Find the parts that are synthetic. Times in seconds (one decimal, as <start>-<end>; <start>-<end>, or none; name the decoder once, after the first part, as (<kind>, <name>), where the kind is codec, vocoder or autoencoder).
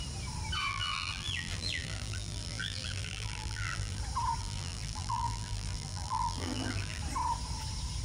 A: 0.7-4.0 (vocoder, BigVGAN v2); 4.4-7.0